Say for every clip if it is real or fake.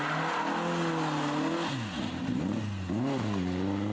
real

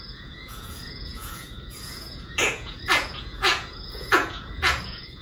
fake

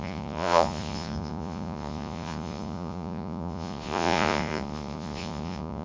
fake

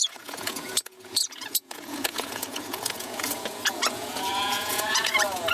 fake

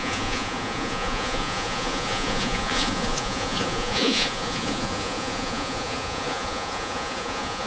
fake